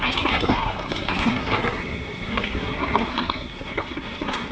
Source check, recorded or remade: remade